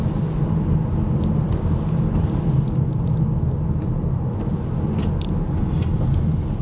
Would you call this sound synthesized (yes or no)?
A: no